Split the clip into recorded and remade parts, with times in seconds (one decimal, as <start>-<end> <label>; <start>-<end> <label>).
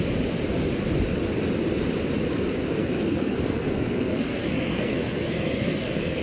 0.0-2.8 recorded; 2.8-6.2 remade